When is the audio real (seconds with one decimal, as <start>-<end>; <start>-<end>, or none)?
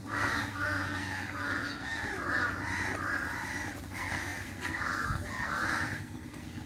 2.1-3.8